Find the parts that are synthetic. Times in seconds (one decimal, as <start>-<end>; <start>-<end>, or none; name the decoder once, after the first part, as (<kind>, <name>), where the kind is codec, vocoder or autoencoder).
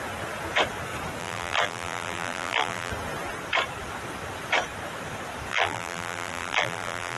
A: 1.2-2.9 (vocoder, BigVGAN v2); 5.5-7.2